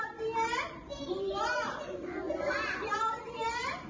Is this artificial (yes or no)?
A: yes